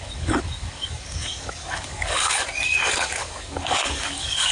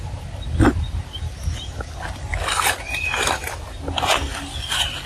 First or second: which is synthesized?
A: first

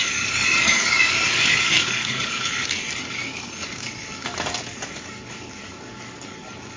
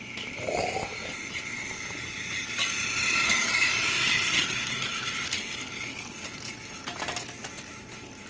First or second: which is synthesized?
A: first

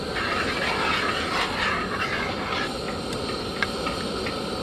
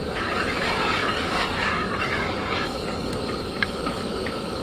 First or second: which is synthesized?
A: second